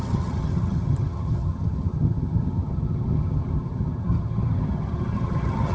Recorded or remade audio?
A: remade